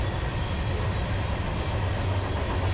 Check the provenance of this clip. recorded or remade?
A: recorded